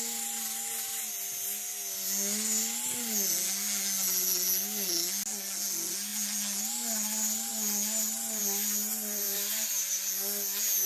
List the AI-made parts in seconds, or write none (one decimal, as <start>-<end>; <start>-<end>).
8.4-9.7